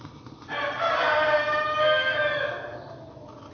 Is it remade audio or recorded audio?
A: recorded